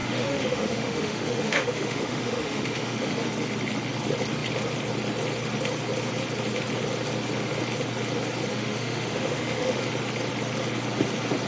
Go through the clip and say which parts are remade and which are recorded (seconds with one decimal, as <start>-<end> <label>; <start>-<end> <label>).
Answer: 0.0-3.1 remade; 3.1-8.5 recorded; 8.5-9.8 remade; 9.8-11.5 recorded